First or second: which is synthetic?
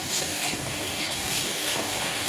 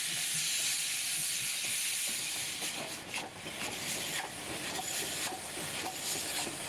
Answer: first